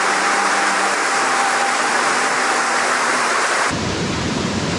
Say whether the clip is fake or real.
fake